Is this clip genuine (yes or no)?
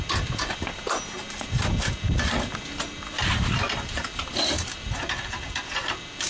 yes